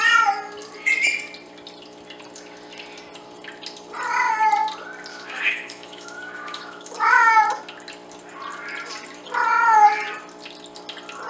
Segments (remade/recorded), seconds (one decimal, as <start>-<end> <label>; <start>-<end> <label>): 0.0-5.1 recorded; 5.1-7.4 remade; 7.4-11.3 recorded

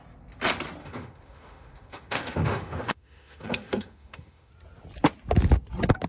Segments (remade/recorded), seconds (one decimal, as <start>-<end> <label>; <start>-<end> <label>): 0.0-0.8 recorded; 0.8-4.5 remade; 4.5-6.1 recorded

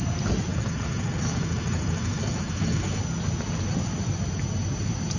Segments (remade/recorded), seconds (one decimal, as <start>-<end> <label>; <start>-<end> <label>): 0.0-0.5 recorded; 0.5-3.0 remade; 3.0-5.2 recorded

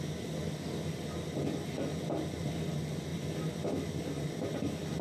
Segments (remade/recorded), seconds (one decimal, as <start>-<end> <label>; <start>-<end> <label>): 0.0-5.0 recorded

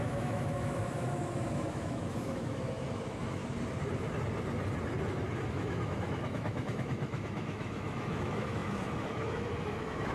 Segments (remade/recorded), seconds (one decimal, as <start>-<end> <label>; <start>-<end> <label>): 0.0-3.4 remade; 3.4-5.5 recorded; 5.5-10.1 remade

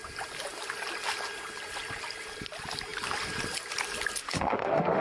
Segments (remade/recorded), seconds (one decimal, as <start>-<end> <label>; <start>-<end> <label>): 0.0-4.2 recorded; 4.2-5.0 remade